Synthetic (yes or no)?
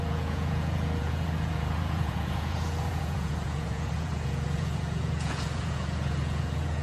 yes